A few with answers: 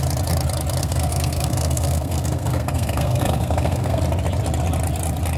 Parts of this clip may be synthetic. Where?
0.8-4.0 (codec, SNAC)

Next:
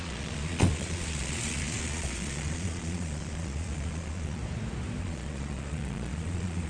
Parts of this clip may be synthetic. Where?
0.0-4.4 (vocoder, Vocos); 5.0-6.7